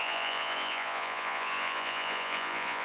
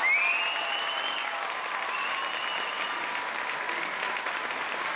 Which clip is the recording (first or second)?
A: second